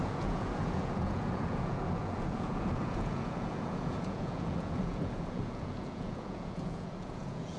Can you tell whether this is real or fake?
fake